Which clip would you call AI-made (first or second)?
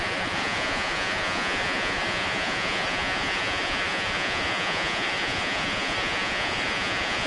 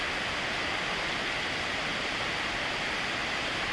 first